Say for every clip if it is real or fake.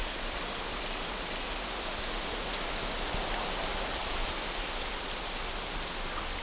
real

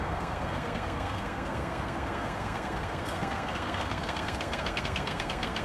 fake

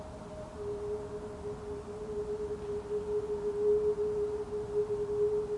real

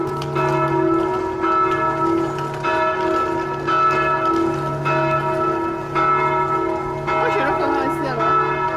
real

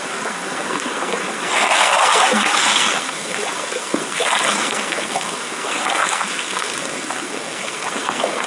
fake